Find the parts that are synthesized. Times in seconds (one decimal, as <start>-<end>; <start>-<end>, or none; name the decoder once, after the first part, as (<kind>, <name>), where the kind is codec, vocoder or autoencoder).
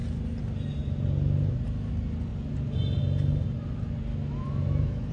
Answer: 4.1-5.1 (autoencoder, DAC-VAE)